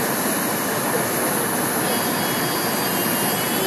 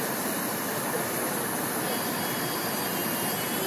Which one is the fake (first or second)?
second